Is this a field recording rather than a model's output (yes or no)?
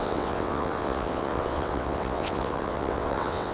no